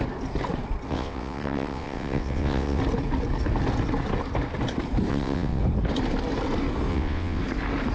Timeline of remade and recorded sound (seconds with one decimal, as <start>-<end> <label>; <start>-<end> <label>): 0.0-0.9 recorded; 0.9-2.8 remade; 2.8-5.1 recorded; 5.1-5.6 remade; 5.6-6.9 recorded; 6.9-7.4 remade; 7.4-7.9 recorded